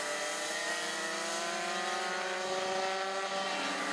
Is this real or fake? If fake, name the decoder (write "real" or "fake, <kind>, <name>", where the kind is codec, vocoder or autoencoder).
real